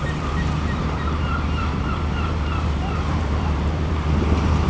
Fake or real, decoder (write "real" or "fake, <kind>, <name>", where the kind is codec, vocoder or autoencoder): fake, vocoder, BigVGAN v2